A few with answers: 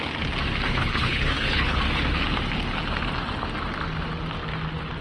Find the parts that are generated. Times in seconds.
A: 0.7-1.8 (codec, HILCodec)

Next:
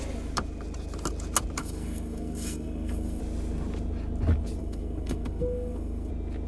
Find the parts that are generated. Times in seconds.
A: 1.6-3.2 (codec, SNAC); 4.6-6.1